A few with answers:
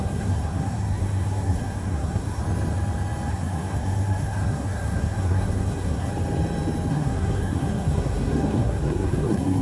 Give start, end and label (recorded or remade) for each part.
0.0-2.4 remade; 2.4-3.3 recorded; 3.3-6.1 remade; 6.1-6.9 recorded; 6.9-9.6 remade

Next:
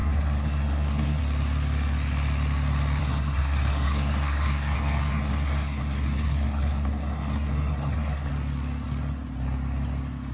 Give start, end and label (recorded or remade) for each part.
0.0-1.2 remade; 1.2-3.0 recorded; 3.0-8.3 remade; 8.3-10.3 recorded

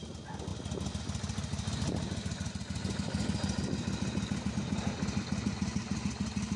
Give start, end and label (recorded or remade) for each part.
0.0-6.6 recorded